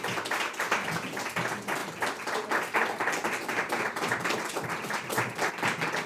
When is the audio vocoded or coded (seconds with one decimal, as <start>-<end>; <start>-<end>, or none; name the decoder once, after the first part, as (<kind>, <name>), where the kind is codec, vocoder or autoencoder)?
none